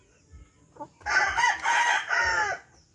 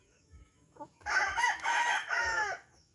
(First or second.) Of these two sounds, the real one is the first